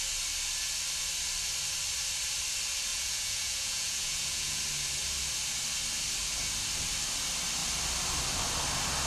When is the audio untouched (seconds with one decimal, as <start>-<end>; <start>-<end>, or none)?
0.0-2.9; 4.6-9.1